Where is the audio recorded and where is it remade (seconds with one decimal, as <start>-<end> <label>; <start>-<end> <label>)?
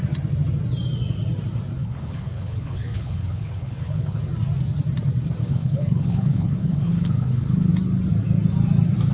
0.0-1.8 recorded; 1.8-4.2 remade; 4.2-5.4 recorded; 5.4-7.7 remade; 7.7-9.1 recorded